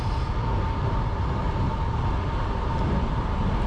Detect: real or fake real